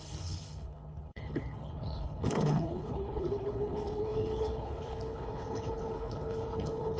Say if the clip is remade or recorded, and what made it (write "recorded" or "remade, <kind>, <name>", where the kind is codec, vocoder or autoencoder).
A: remade, codec, HILCodec